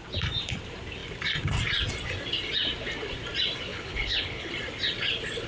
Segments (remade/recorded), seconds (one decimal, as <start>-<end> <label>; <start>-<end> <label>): 0.0-3.7 recorded; 3.7-4.5 remade; 4.5-5.5 recorded